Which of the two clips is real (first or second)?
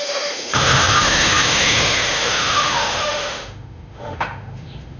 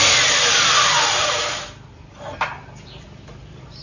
second